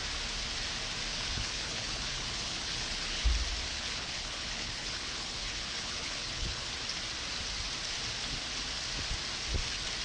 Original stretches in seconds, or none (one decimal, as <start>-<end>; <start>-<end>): 0.0-1.1; 3.3-3.7; 6.7-10.0